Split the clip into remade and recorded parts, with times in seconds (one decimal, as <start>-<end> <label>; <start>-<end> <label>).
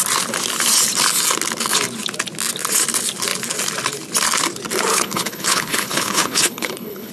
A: 0.0-4.9 recorded; 4.9-7.1 remade